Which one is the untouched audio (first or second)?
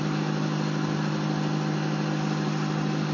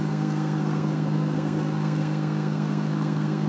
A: first